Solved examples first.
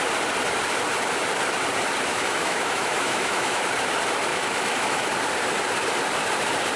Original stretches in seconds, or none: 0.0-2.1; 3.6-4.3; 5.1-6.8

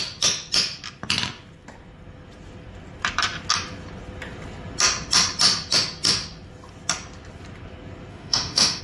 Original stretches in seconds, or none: 0.0-8.1